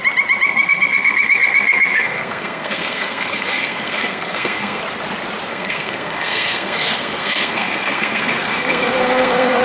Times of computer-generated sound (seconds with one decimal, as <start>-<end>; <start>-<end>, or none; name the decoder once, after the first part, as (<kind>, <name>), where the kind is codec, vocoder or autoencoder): 0.5-4.8 (codec, SNAC); 5.5-9.6